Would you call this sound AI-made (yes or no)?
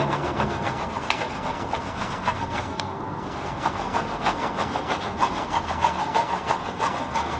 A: yes